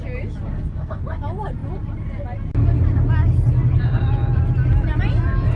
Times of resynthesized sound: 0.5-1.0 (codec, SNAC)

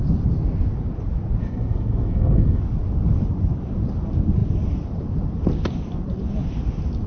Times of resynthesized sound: 1.4-2.6 (codec, SNAC)

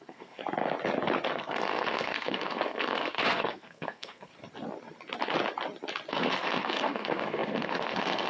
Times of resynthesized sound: 0.0-0.4 (codec, SNAC); 1.3-4.3; 6.1-8.3

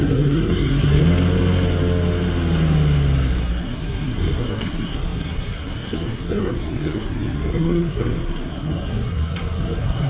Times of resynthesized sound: 0.0-1.0 (codec, SNAC); 3.4-10.1

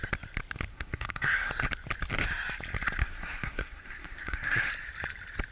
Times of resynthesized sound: 0.7-1.5 (codec, SNAC); 3.0-4.7